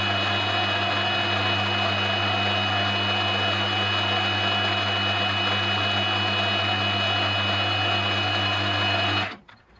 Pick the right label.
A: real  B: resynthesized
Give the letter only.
A